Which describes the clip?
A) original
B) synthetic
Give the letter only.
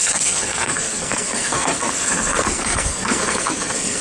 B